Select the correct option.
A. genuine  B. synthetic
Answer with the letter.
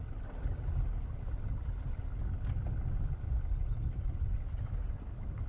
A